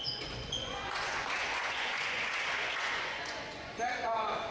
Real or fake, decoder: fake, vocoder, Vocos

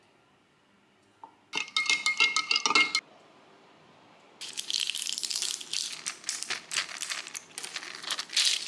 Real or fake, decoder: real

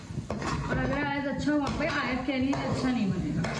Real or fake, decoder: real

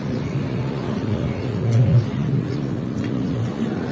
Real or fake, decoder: fake, vocoder, Vocos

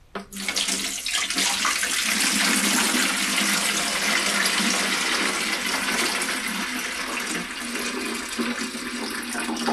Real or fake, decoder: real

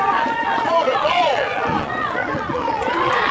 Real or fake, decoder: fake, vocoder, Vocos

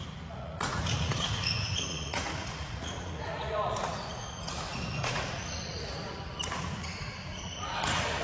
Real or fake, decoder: fake, vocoder, Vocos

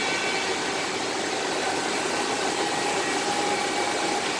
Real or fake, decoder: real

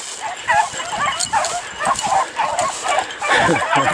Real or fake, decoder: real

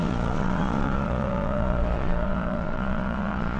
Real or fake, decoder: fake, vocoder, Vocos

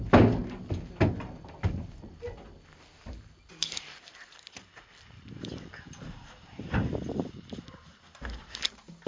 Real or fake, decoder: real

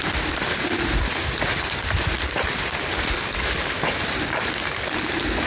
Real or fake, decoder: real